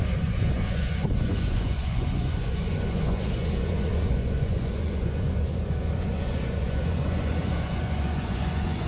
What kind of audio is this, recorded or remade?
remade